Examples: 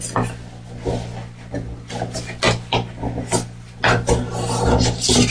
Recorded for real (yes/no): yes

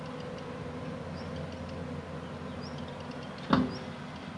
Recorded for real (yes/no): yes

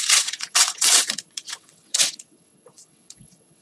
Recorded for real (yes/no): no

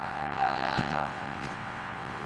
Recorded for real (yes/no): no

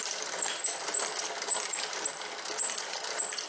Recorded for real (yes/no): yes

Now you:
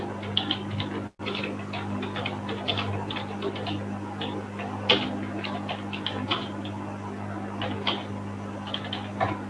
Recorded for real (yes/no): yes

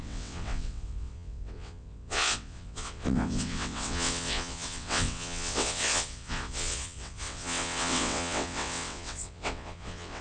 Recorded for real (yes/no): no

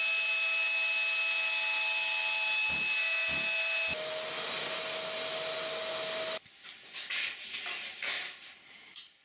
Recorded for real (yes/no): yes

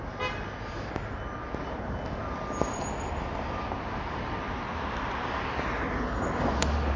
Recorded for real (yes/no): yes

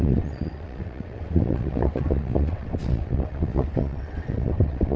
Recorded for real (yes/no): no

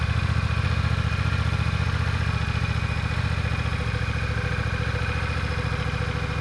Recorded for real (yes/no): yes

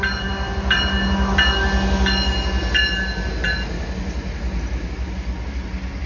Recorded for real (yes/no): yes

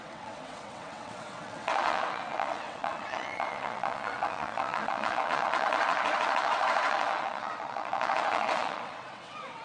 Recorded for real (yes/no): no